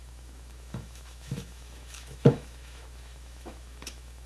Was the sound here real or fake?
fake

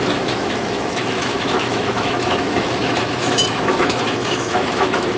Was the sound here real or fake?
fake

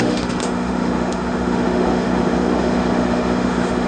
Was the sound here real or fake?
fake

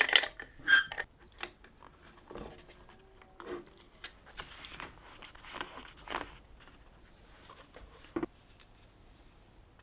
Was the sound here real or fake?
real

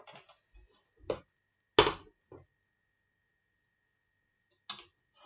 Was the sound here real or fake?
real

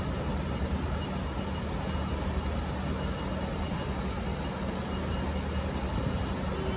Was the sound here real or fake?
real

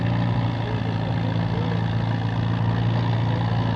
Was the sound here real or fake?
real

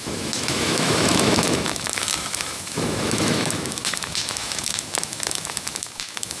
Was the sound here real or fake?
fake